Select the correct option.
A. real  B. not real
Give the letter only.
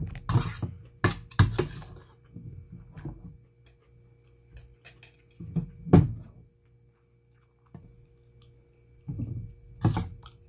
A